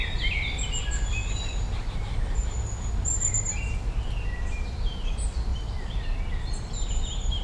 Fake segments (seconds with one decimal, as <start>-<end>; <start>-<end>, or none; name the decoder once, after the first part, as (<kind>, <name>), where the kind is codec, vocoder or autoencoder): 0.0-5.5 (vocoder, BigVGAN v2); 6.2-7.4